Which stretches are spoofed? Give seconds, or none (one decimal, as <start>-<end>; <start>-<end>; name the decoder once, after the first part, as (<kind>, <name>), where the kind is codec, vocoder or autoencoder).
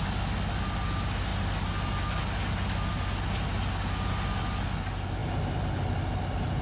none